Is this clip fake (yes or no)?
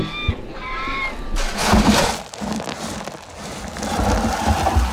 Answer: no